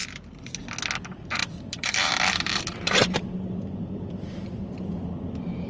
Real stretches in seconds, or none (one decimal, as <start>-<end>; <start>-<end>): 0.0-1.4; 4.8-5.7